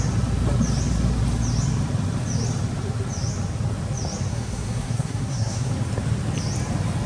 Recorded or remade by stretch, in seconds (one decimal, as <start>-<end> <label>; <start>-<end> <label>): 0.0-4.3 recorded; 4.3-5.7 remade; 5.7-7.1 recorded